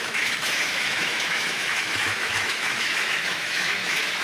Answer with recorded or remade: remade